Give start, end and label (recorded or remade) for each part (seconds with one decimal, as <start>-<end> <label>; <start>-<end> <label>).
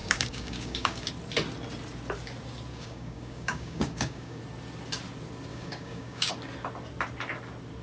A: 0.0-1.1 remade; 1.1-2.7 recorded; 2.7-4.4 remade; 4.4-5.5 recorded; 5.5-6.3 remade; 6.3-7.8 recorded